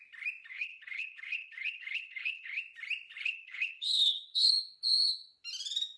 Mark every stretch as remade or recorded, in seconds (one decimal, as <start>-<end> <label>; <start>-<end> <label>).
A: 0.0-0.5 recorded; 0.5-2.6 remade; 2.6-3.1 recorded; 3.1-4.5 remade; 4.5-6.0 recorded